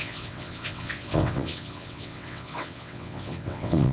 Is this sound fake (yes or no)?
yes